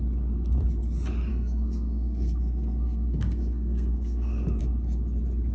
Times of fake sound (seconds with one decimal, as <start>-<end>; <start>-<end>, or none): 1.3-4.6